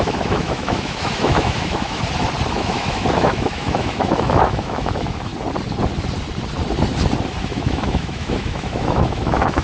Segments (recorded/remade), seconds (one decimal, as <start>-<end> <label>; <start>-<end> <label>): 0.0-2.0 remade; 2.0-2.5 recorded; 2.5-5.3 remade; 5.3-7.4 recorded; 7.4-9.6 remade